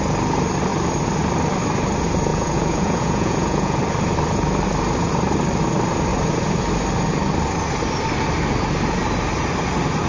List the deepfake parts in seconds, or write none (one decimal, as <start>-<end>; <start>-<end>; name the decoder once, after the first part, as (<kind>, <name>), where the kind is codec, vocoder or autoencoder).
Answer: 2.3-3.8 (vocoder, Vocos)